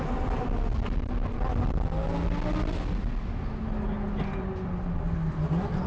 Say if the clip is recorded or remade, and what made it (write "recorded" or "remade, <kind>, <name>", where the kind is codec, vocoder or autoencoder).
recorded